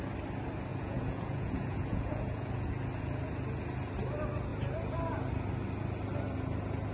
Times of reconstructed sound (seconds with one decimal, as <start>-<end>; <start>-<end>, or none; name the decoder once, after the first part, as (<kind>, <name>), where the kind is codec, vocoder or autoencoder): 0.7-2.7 (vocoder, Vocos)